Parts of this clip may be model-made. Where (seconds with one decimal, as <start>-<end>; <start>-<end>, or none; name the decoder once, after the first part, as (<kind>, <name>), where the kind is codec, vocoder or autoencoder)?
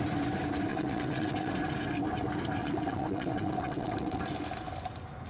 0.7-1.5 (vocoder, WaveNeXt); 2.6-4.2